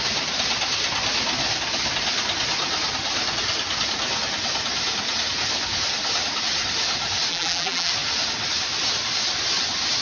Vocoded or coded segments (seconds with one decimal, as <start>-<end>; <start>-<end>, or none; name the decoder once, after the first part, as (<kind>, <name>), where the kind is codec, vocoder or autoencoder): 7.3-7.9 (vocoder, BigVGAN v2)